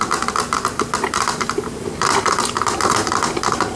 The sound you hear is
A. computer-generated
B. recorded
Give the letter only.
B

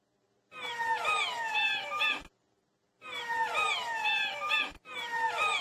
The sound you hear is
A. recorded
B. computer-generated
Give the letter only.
A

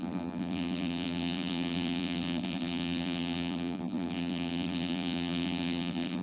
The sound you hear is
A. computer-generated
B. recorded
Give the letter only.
A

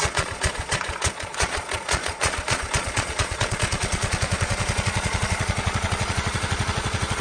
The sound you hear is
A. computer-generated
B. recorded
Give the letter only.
A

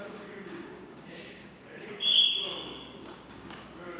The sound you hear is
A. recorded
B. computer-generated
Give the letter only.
B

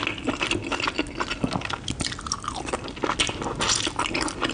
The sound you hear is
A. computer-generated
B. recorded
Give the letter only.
B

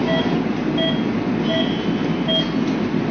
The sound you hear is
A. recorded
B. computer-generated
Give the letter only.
A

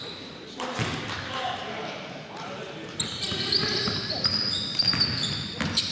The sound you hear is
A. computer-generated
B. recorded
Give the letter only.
B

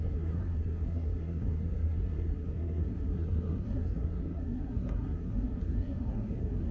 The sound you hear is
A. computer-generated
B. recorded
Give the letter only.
A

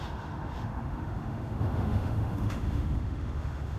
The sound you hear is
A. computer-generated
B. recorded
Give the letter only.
A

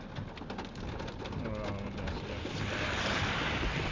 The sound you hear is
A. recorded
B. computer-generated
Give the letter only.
A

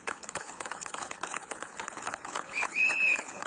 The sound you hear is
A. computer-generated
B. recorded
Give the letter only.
A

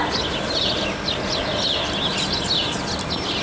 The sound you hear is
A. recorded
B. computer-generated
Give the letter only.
A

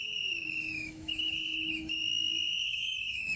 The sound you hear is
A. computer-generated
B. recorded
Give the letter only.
A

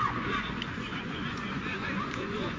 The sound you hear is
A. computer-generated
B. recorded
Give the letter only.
A